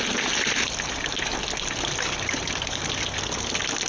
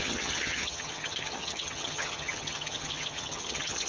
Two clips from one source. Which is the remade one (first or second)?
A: second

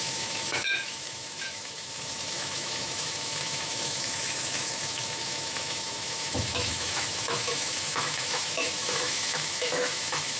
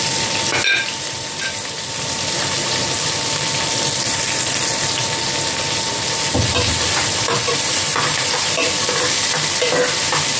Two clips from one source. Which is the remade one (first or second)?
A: first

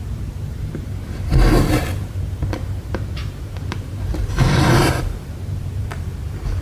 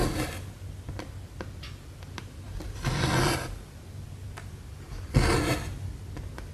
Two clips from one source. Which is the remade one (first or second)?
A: first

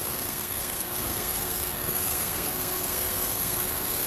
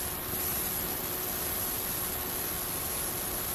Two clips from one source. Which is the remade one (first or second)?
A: first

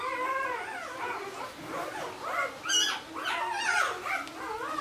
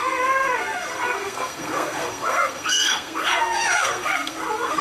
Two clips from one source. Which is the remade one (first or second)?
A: second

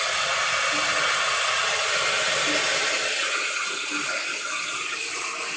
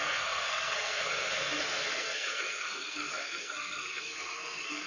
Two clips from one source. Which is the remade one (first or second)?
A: second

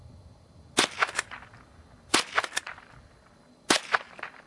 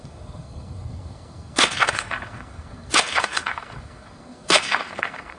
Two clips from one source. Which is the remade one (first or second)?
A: second